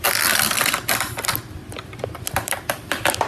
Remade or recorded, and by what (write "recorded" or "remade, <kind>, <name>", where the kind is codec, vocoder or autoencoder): recorded